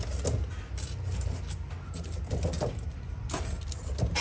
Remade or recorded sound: recorded